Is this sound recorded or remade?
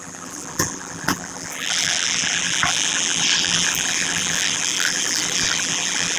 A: remade